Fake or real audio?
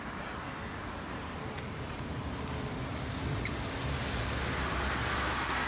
fake